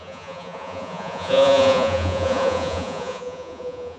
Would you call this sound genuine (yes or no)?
no